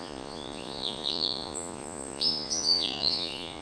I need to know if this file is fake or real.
fake